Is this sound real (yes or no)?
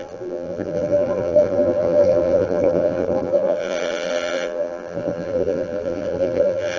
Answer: no